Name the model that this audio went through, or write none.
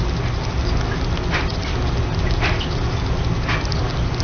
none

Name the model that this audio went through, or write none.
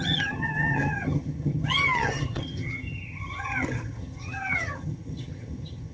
vocoder, HiFi-GAN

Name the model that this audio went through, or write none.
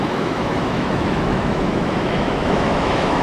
autoencoder, DAC-VAE